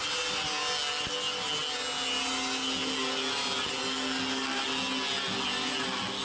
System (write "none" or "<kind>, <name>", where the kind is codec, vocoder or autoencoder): none